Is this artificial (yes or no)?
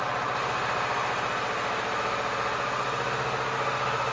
no